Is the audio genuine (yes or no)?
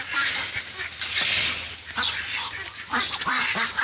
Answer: yes